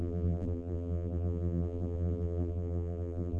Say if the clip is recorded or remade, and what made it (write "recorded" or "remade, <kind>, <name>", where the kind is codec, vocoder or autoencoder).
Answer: remade, vocoder, BigVGAN v2